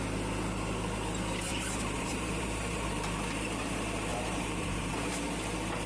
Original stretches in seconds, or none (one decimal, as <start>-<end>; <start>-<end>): 0.0-1.5; 2.9-4.1; 4.9-5.9